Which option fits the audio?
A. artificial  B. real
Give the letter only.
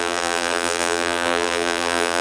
A